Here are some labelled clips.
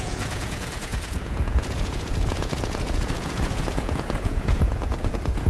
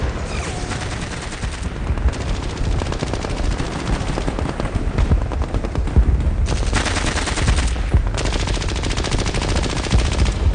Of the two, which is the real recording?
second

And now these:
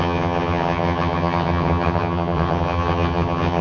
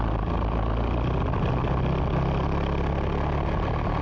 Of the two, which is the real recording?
second